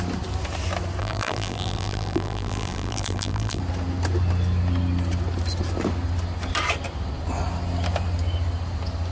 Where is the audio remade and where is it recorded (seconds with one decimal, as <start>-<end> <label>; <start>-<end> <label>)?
0.0-1.0 recorded; 1.0-3.6 remade; 3.6-9.1 recorded